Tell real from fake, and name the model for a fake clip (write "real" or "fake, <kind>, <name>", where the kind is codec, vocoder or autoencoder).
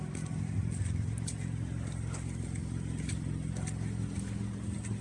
real